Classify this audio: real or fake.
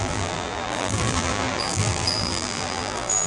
fake